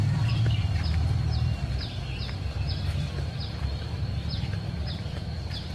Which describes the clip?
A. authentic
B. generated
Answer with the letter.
B